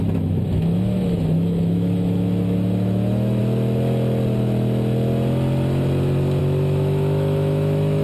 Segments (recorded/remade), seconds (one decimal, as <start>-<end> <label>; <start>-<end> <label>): 0.0-3.4 remade; 3.4-6.4 recorded; 6.4-8.0 remade